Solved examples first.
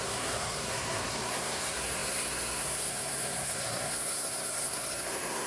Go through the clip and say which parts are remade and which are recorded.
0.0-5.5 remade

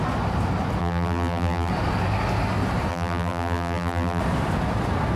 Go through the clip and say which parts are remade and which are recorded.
0.0-0.8 recorded; 0.8-1.7 remade; 1.7-2.9 recorded; 2.9-4.2 remade; 4.2-5.2 recorded

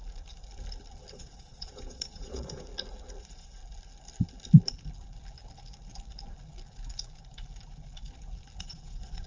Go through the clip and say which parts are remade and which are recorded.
0.0-1.1 recorded; 1.1-2.7 remade; 2.7-3.2 recorded; 3.2-3.6 remade; 3.6-8.6 recorded; 8.6-9.3 remade

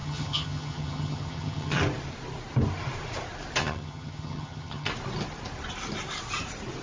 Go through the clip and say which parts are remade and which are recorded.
0.0-1.8 remade; 1.8-3.6 recorded; 3.6-4.9 remade; 4.9-6.8 recorded

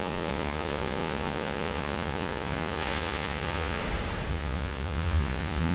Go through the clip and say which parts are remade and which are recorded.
0.0-3.8 remade; 3.8-4.3 recorded; 4.3-5.7 remade